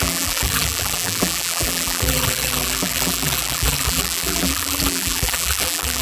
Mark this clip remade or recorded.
remade